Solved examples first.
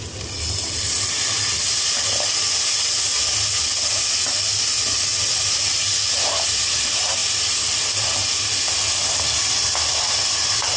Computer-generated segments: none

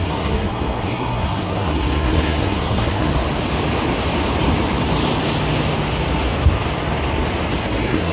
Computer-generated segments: 0.0-3.1 (codec, SNAC); 7.6-8.1

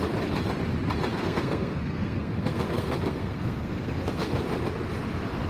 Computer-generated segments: 1.1-4.4 (codec, SNAC)

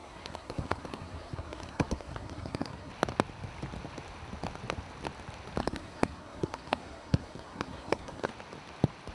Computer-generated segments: 0.0-2.9 (codec, SNAC); 5.6-8.3

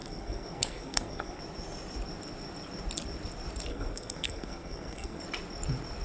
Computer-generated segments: 0.0-1.4 (codec, SNAC); 3.7-5.2